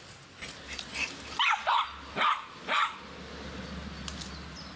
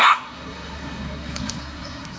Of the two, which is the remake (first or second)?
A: second